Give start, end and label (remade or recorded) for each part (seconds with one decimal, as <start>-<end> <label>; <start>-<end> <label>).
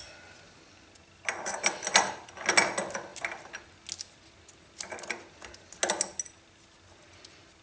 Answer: 0.0-7.6 recorded